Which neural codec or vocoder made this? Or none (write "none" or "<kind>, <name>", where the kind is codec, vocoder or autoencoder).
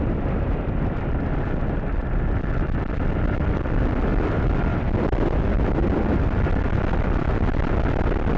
none